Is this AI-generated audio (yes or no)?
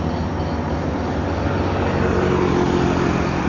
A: no